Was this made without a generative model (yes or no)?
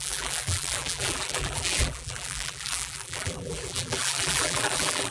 no